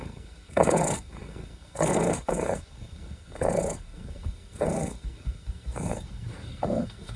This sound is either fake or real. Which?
fake